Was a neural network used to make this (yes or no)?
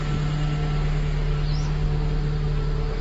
no